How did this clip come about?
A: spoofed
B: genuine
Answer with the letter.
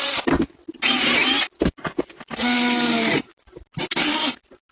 B